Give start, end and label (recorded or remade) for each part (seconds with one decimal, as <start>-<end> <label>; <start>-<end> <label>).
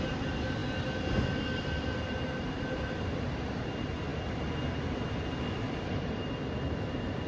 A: 0.0-7.3 recorded